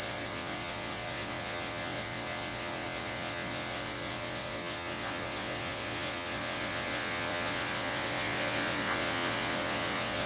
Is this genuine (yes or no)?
no